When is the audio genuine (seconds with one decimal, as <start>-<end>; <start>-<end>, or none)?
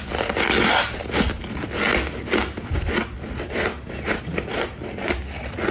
0.0-5.7